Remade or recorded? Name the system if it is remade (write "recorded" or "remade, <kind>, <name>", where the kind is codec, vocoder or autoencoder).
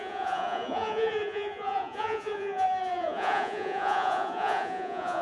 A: remade, vocoder, Vocos